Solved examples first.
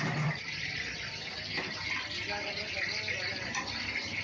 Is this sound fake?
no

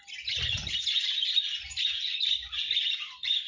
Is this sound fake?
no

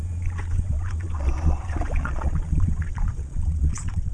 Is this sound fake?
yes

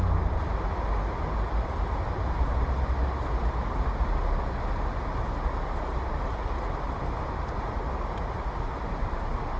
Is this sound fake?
no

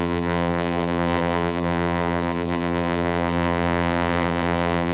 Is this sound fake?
yes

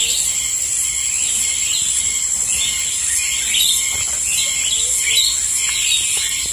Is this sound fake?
no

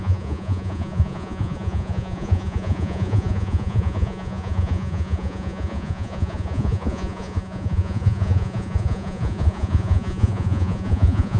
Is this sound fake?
yes